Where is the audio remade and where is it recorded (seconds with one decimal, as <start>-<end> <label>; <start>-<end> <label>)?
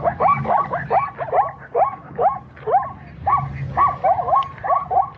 0.0-1.9 recorded; 1.9-2.4 remade; 2.4-5.2 recorded